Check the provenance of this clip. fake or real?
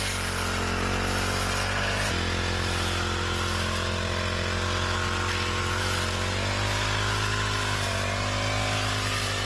real